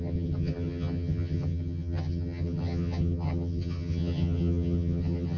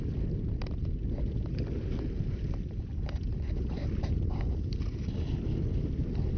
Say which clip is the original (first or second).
second